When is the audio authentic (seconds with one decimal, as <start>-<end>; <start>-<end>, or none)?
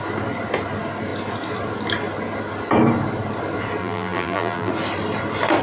0.0-3.8; 4.7-5.6